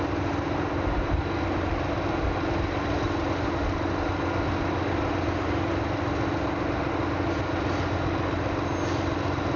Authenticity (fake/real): real